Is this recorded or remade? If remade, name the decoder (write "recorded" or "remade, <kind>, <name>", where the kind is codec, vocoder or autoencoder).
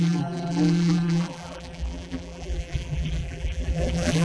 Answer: remade, vocoder, BigVGAN v2